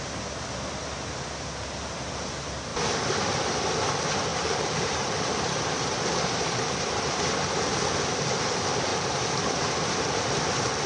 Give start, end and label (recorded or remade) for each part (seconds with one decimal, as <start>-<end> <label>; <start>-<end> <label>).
0.0-4.3 recorded; 4.3-6.9 remade; 6.9-10.9 recorded